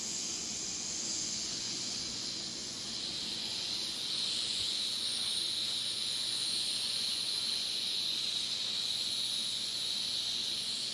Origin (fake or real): fake